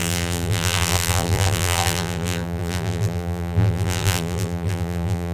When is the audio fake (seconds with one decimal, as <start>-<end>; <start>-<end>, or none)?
0.0-5.3